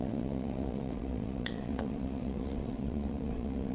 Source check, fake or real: fake